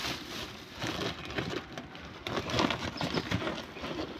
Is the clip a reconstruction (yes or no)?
no